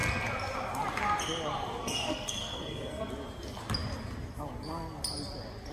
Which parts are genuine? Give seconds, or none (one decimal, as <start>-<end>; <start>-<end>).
0.0-1.8; 3.1-5.7